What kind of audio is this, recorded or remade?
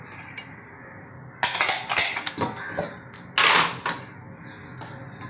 recorded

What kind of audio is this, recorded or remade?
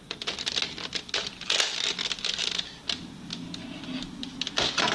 recorded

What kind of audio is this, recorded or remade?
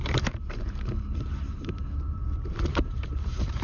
remade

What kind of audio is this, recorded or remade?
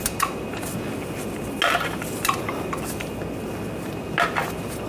recorded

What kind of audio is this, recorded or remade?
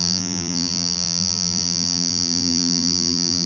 remade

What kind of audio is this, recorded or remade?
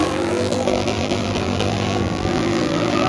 remade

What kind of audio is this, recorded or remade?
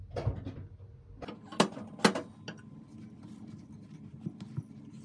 recorded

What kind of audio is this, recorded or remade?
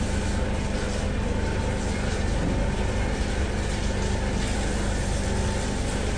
recorded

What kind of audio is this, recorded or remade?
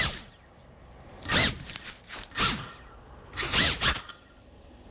recorded